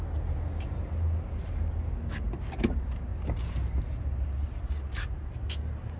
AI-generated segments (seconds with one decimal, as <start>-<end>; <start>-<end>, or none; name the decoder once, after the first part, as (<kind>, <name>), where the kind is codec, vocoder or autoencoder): none